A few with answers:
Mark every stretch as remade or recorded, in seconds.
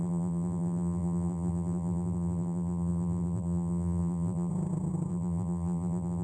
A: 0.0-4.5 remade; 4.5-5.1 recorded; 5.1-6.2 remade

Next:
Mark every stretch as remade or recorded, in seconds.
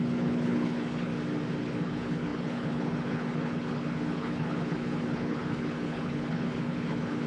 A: 0.0-1.1 remade; 1.1-1.6 recorded; 1.6-7.3 remade